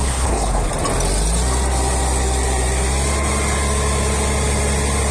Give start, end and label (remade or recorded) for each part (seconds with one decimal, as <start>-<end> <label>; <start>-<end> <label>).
0.0-0.7 remade; 0.7-5.1 recorded